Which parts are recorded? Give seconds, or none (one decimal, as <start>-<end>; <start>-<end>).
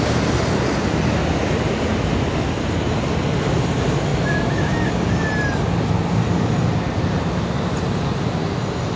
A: 0.0-9.0